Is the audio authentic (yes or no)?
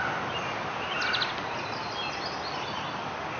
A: yes